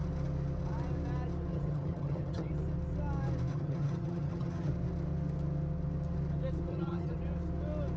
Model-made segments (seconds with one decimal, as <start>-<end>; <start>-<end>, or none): 1.5-2.5; 3.5-4.7; 6.7-7.2